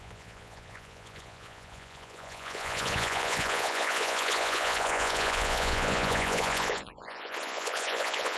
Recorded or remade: remade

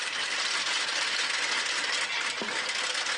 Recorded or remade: recorded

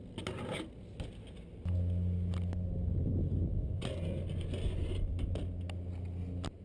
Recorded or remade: recorded